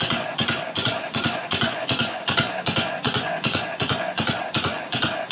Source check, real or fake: fake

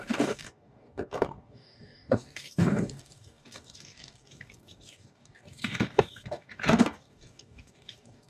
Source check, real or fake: fake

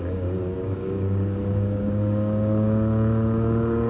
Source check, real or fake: fake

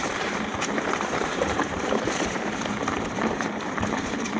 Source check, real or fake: fake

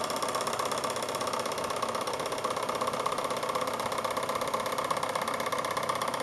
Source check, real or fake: real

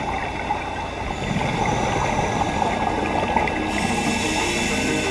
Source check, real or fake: real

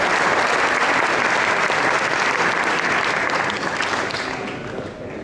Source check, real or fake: real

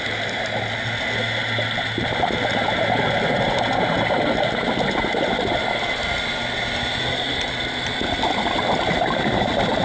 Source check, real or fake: real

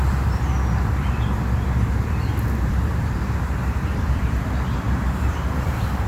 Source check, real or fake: fake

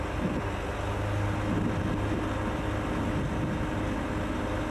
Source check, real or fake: real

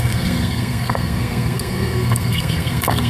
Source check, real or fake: fake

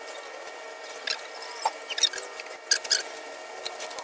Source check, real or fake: real